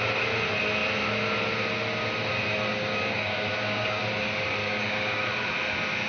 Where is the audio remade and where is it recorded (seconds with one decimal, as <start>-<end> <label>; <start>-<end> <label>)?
0.0-2.7 recorded; 2.7-4.0 remade; 4.0-4.6 recorded; 4.6-5.2 remade; 5.2-6.1 recorded